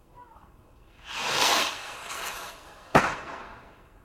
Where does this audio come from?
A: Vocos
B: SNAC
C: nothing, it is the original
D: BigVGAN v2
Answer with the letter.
B